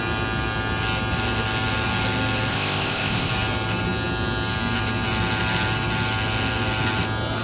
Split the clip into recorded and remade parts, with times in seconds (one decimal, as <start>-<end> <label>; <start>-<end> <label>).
0.0-2.5 recorded; 2.5-3.3 remade; 3.3-7.4 recorded